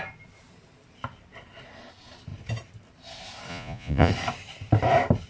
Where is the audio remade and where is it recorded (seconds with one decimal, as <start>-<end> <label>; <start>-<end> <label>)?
0.0-3.5 recorded; 3.5-4.1 remade; 4.1-5.3 recorded